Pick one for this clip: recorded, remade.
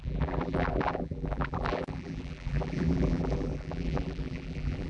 remade